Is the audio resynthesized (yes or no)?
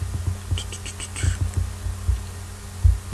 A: no